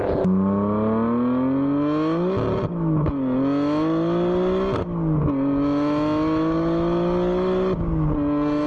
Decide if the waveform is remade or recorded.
recorded